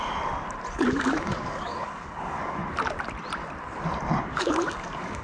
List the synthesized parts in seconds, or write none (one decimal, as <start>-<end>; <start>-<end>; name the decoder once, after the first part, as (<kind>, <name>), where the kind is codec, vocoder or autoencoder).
0.7-2.6 (codec, DAC); 4.2-5.2